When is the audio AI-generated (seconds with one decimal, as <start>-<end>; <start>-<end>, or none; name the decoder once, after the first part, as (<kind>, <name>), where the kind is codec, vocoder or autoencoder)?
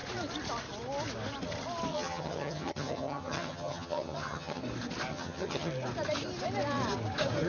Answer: 1.9-4.6 (vocoder, HiFi-GAN); 5.1-5.7